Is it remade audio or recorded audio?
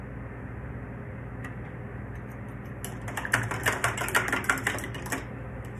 recorded